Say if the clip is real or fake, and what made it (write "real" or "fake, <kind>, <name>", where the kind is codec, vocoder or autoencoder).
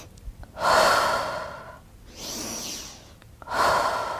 real